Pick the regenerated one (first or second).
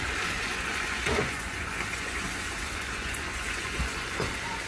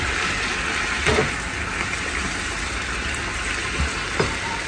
first